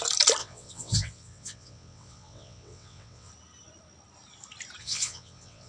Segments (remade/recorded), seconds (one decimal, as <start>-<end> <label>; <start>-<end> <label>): 0.0-0.4 recorded; 0.4-3.3 remade; 3.3-4.8 recorded; 4.8-5.7 remade